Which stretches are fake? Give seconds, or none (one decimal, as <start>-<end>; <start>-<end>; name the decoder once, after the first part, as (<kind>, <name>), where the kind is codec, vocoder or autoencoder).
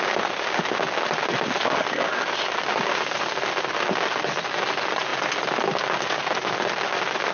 none